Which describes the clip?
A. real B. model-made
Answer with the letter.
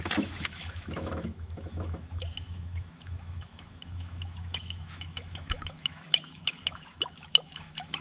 B